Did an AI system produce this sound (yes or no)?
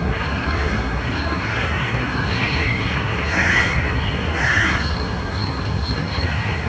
yes